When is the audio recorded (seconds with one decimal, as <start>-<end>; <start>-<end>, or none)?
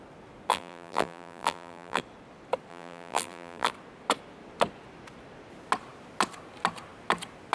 0.0-0.5; 2.0-2.7; 3.7-7.5